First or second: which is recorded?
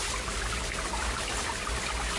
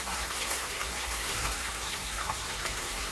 first